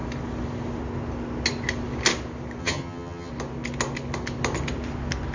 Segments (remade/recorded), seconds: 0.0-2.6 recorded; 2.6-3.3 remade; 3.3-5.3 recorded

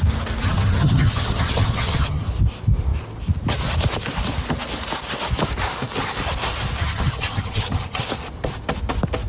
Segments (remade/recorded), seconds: 0.0-0.4 recorded; 0.4-2.3 remade; 2.3-6.8 recorded; 6.8-8.0 remade; 8.0-9.3 recorded